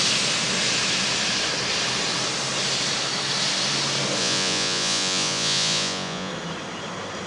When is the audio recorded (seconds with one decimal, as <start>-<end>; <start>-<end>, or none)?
0.0-4.2; 6.3-7.3

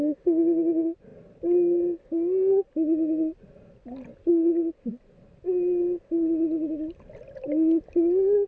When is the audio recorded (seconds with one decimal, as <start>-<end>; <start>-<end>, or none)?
0.0-8.5